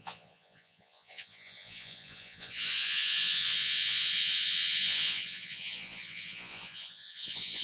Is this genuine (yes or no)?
no